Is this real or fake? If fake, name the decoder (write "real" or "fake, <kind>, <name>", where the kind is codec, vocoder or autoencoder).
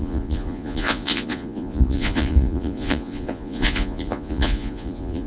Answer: fake, vocoder, Vocos